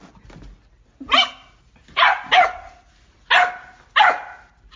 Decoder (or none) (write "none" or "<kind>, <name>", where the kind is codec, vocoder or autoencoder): none